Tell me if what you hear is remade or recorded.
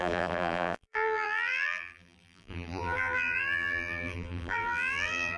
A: remade